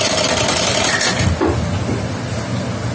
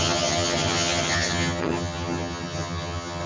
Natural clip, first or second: first